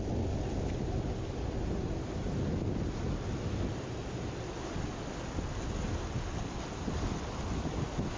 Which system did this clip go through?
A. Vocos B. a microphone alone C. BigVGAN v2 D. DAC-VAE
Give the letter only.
B